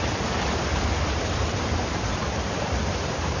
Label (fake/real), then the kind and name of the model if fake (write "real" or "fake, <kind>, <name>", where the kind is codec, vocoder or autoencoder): fake, vocoder, BigVGAN v2